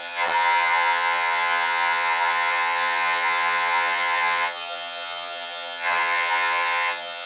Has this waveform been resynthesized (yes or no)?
yes